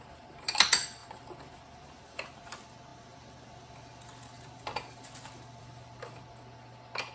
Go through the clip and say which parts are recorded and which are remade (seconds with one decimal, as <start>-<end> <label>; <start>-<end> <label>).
0.0-7.1 recorded